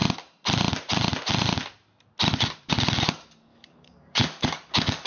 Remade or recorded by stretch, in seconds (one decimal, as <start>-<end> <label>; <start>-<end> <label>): 0.0-3.5 recorded; 3.5-5.1 remade